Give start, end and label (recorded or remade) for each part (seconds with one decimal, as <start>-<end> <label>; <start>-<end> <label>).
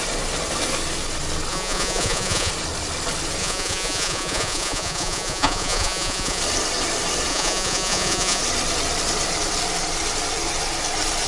0.0-1.5 recorded; 1.5-2.5 remade; 2.5-3.4 recorded; 3.4-6.4 remade; 6.4-7.3 recorded; 7.3-8.4 remade; 8.4-11.3 recorded